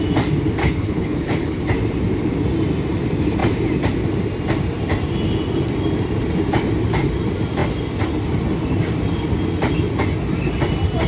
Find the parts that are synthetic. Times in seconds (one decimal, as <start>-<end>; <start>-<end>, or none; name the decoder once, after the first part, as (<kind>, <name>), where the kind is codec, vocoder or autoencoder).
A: 0.6-1.6 (codec, HILCodec)